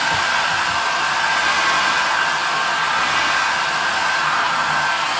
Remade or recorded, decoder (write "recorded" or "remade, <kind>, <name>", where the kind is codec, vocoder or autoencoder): recorded